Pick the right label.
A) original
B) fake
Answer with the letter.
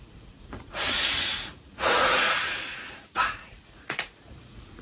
B